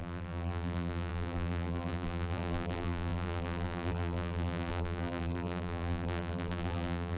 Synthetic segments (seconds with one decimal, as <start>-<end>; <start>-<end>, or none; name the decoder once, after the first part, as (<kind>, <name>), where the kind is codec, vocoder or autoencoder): 0.0-7.2 (vocoder, BigVGAN v2)